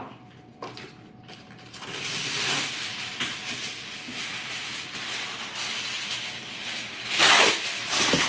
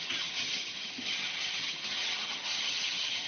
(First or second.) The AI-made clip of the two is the second